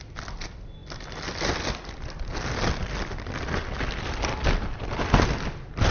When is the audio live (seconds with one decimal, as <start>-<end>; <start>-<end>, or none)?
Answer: 0.0-5.9